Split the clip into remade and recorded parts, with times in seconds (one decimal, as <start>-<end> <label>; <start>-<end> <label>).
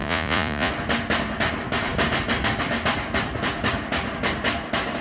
0.0-0.7 remade; 0.7-5.0 recorded